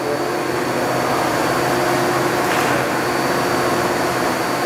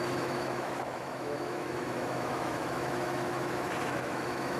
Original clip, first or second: first